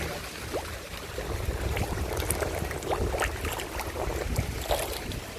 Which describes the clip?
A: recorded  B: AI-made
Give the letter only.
A